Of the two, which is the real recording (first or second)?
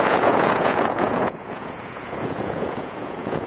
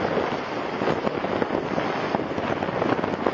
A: second